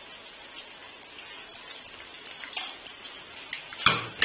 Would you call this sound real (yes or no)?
yes